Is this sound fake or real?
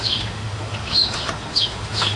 fake